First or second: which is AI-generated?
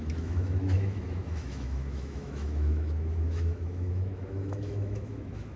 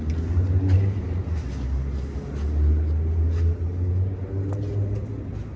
first